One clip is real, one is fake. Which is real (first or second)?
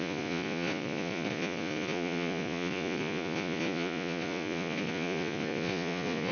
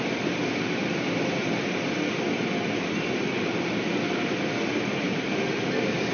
second